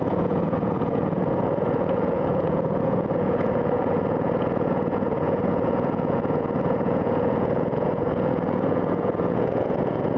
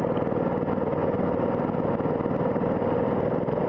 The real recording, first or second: second